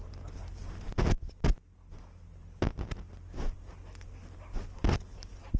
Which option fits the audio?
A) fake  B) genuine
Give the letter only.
B